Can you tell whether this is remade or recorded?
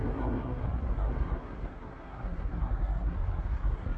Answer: remade